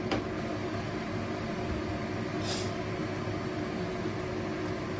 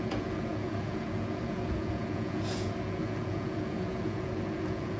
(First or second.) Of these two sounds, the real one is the first